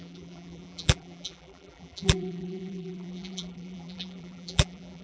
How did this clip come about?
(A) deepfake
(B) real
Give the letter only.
A